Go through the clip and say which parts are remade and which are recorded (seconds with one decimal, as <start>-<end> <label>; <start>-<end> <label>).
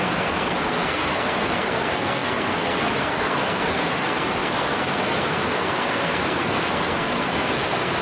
0.0-8.0 remade